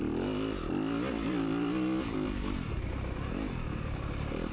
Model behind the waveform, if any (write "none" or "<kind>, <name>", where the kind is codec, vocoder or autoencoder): none